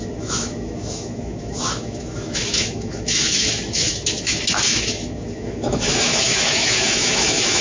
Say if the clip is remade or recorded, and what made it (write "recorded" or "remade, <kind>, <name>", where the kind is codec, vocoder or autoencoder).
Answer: remade, autoencoder, DAC-VAE